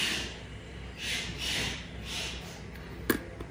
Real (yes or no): yes